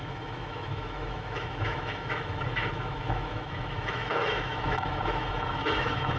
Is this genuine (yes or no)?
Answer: no